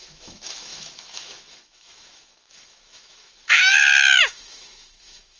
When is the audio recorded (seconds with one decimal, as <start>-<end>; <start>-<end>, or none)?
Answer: none